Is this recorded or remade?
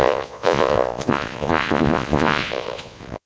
remade